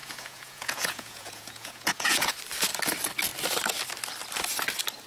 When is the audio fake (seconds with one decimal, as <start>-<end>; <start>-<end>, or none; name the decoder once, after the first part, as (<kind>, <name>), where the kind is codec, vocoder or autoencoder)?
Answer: 0.0-2.3 (vocoder, Vocos)

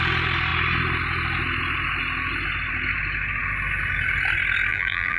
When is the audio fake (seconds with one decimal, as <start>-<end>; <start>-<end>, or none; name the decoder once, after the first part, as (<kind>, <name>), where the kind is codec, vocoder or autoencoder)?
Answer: 4.7-5.2 (vocoder, BigVGAN v2)

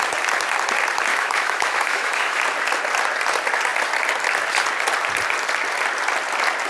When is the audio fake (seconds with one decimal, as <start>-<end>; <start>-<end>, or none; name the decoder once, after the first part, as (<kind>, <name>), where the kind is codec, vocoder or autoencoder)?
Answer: 1.1-2.4 (autoencoder, DAC-VAE)

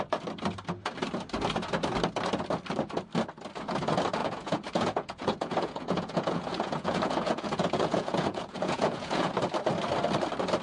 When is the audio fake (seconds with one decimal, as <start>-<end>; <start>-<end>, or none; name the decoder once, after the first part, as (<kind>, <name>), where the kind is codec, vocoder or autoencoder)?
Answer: 4.2-9.3 (vocoder, Vocos)

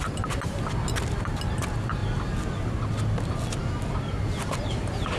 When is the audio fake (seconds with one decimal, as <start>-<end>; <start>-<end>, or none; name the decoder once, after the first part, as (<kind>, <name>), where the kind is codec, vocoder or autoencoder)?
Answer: none

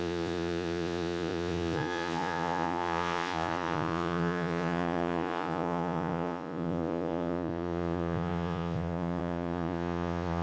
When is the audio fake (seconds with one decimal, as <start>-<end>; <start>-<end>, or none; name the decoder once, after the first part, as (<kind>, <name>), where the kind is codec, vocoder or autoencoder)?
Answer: 0.0-10.4 (vocoder, Vocos)

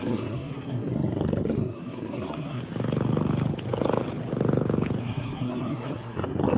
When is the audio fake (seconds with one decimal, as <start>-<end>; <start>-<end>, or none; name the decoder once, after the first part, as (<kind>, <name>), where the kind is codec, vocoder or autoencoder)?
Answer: 0.0-2.6 (codec, SNAC); 5.0-6.6